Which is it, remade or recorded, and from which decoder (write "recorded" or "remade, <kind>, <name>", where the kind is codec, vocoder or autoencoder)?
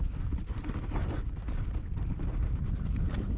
recorded